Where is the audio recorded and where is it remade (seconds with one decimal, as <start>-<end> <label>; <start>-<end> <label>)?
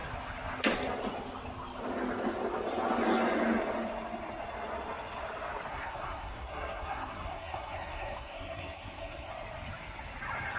0.0-5.7 recorded; 5.7-9.3 remade; 9.3-10.6 recorded